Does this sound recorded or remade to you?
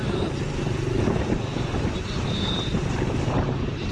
remade